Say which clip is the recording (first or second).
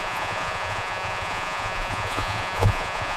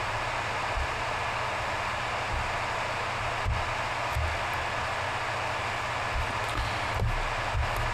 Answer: second